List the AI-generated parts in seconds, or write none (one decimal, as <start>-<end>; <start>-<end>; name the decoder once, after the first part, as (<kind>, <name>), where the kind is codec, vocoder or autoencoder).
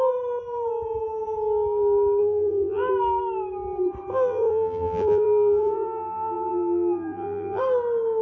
2.2-2.9 (vocoder, BigVGAN v2); 4.1-7.6